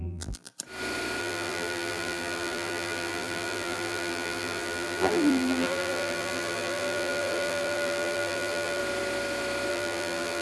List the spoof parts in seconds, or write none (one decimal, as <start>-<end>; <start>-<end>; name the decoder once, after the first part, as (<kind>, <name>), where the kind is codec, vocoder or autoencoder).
0.0-0.5 (vocoder, BigVGAN v2); 1.2-8.8; 9.7-10.4

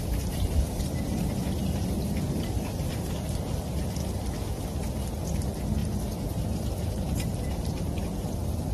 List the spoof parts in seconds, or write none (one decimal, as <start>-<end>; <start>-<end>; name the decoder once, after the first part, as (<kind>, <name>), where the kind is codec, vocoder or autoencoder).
0.0-4.0 (vocoder, BigVGAN v2); 4.5-8.7

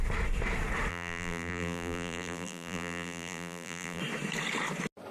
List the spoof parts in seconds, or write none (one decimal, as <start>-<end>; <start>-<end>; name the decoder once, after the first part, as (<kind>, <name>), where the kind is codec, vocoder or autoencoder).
0.9-4.0 (vocoder, BigVGAN v2)

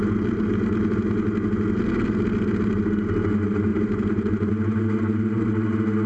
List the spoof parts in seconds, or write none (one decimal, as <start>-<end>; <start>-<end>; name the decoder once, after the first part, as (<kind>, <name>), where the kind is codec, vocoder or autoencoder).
3.7-4.5 (vocoder, BigVGAN v2)

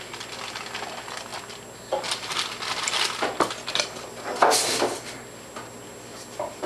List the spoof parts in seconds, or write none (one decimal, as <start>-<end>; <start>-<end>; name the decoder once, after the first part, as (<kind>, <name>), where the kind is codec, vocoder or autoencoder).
none

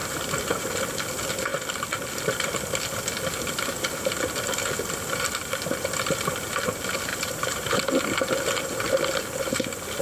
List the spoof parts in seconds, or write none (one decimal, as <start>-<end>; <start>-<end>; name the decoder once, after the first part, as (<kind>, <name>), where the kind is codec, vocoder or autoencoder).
0.0-0.6 (vocoder, BigVGAN v2); 7.1-7.9